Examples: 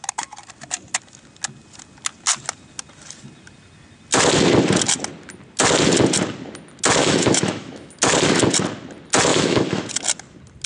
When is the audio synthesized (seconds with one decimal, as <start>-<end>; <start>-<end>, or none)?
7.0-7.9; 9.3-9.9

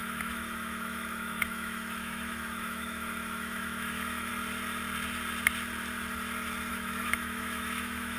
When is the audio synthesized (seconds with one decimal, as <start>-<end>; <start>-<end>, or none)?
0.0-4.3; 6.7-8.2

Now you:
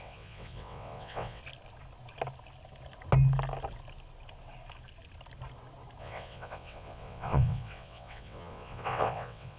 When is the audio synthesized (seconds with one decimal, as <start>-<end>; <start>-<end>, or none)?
0.0-1.4; 6.0-9.6